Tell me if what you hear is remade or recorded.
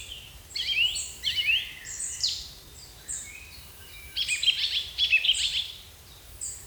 remade